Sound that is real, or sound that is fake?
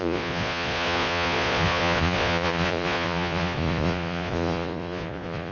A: fake